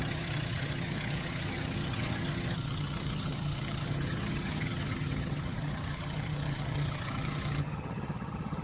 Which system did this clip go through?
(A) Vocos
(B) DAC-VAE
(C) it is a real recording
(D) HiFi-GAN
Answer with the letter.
D